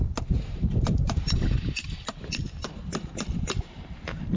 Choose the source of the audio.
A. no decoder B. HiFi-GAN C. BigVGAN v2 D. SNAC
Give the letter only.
C